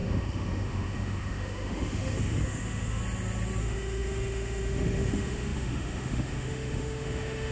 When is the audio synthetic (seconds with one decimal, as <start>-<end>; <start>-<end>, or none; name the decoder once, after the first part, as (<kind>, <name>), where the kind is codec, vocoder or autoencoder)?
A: 0.0-3.0 (autoencoder, DAC-VAE); 3.6-7.5